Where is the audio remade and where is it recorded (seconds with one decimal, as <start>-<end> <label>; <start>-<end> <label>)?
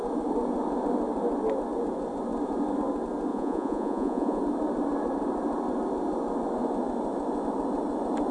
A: 0.0-3.3 recorded; 3.3-4.4 remade; 4.4-8.3 recorded